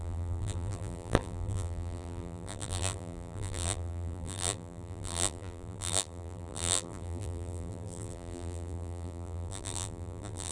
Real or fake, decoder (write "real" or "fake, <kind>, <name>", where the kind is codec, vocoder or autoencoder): fake, vocoder, BigVGAN v2